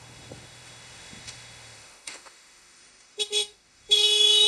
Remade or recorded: remade